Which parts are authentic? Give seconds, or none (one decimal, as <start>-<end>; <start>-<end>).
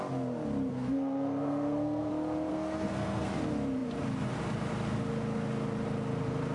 0.0-0.7; 2.1-2.5; 3.3-6.5